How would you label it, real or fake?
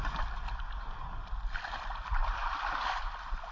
real